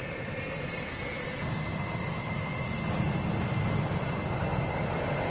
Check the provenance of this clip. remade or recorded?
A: recorded